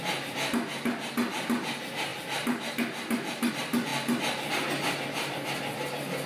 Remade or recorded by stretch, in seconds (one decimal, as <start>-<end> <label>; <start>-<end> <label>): 0.0-2.1 recorded; 2.1-3.5 remade; 3.5-6.3 recorded